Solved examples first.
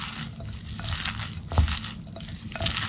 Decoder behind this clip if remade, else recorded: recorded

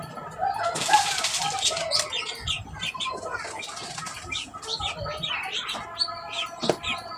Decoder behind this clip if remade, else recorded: recorded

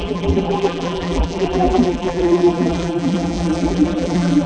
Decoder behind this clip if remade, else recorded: remade, vocoder, BigVGAN v2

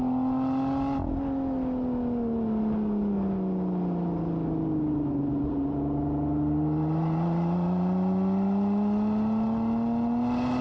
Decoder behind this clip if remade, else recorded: recorded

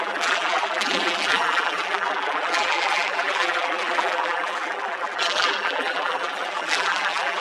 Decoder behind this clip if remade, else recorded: remade, vocoder, BigVGAN v2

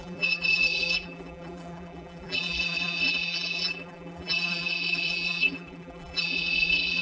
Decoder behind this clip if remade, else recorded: remade, vocoder, BigVGAN v2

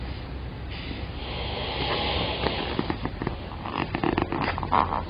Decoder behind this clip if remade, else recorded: recorded